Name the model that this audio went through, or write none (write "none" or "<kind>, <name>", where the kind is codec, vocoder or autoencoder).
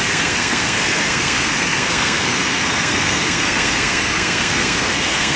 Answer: codec, SNAC